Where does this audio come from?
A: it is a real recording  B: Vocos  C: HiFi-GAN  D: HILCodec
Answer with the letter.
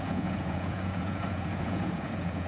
B